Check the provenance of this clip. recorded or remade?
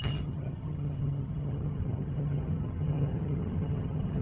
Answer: remade